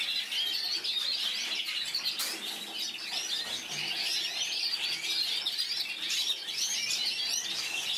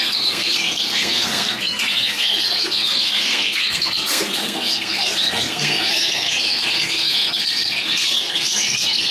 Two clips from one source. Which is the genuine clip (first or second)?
first